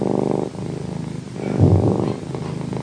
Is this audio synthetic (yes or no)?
no